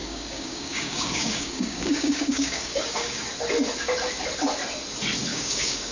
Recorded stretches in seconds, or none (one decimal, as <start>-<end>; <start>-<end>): 3.3-5.3